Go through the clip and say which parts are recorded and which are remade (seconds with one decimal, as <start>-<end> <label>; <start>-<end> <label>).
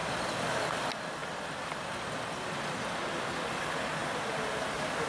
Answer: 0.0-5.1 recorded